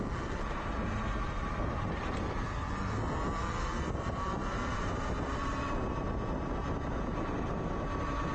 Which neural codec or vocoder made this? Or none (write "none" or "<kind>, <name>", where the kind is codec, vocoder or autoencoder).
none